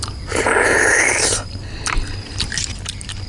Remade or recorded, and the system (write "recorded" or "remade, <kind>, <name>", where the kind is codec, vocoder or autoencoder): recorded